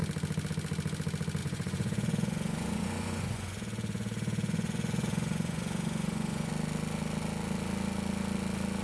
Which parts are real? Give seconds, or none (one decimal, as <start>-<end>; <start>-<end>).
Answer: 0.0-1.4; 6.5-8.8